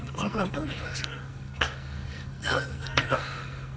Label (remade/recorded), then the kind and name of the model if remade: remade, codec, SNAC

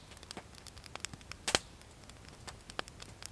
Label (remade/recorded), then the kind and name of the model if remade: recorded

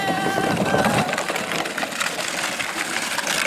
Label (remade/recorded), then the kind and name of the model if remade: recorded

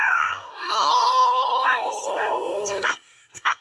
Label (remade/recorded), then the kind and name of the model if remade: remade, codec, SNAC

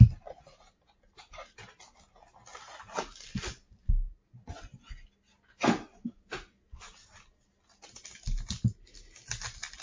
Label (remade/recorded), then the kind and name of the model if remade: recorded